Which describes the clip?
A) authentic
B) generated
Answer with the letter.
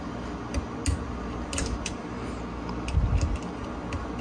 A